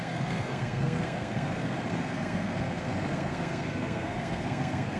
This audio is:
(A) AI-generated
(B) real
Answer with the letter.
A